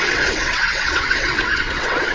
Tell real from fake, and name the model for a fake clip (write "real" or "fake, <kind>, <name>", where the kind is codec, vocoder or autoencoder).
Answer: fake, vocoder, WaveNeXt